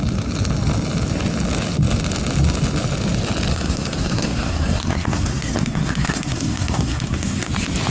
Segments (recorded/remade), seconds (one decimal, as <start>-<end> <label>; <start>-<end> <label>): 0.0-3.5 recorded; 3.5-7.5 remade; 7.5-7.9 recorded